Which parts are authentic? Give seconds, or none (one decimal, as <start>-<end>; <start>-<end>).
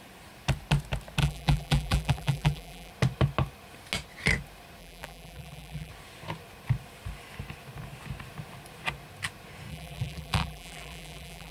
0.0-1.2; 2.9-4.8; 5.9-9.7